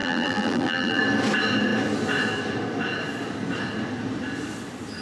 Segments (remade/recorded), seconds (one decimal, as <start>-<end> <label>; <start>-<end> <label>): 0.0-1.0 remade; 1.0-5.0 recorded